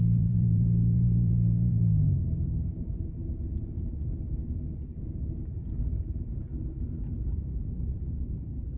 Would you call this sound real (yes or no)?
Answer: no